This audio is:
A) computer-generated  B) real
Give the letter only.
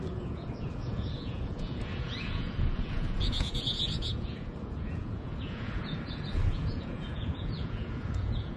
A